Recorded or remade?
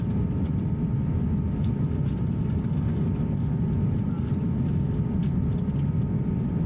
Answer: recorded